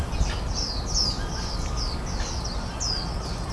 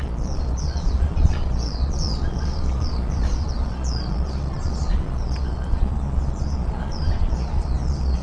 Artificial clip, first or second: second